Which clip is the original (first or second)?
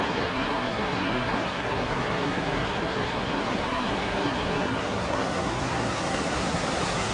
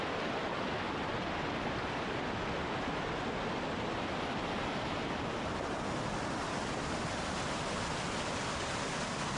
second